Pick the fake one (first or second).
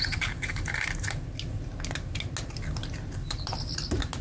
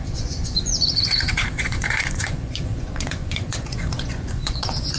second